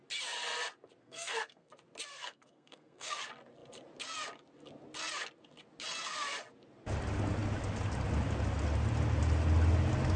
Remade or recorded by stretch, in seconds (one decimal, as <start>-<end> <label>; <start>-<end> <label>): 0.0-1.0 recorded; 1.0-1.7 remade; 1.7-2.1 recorded; 2.1-3.2 remade; 3.2-10.2 recorded